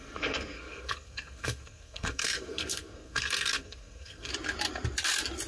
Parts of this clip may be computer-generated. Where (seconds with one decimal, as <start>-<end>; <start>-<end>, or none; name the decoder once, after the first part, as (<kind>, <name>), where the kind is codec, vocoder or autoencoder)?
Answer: 0.0-4.3 (codec, SNAC)